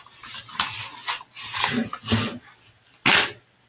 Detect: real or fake real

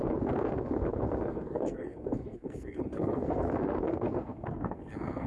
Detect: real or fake fake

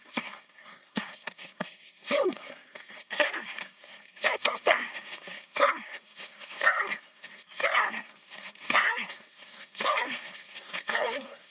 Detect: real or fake fake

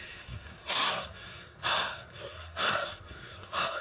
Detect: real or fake fake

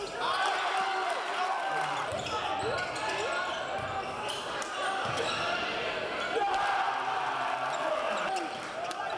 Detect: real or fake real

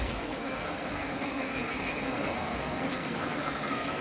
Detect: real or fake fake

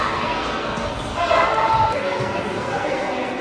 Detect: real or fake fake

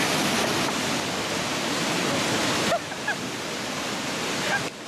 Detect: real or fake real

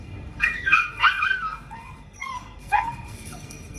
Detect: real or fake fake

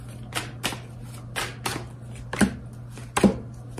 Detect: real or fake real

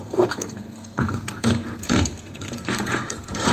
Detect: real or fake fake